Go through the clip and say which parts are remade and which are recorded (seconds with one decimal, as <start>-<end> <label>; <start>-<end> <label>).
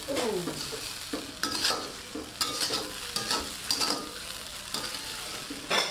0.0-5.9 recorded